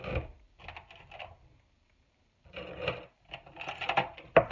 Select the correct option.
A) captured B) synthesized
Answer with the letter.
A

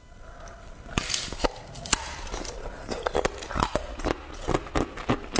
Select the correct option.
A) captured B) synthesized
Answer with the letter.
A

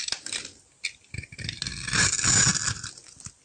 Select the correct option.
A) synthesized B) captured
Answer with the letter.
B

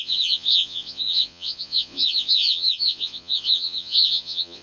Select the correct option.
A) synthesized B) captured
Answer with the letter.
A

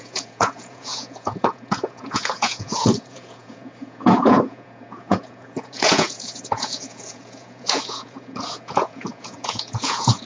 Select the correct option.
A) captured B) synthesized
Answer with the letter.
B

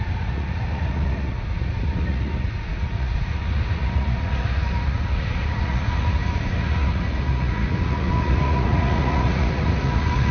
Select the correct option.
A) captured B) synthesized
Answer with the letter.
B